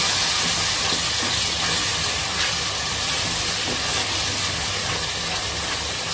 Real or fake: real